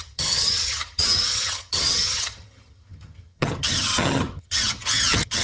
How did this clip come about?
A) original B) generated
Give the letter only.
B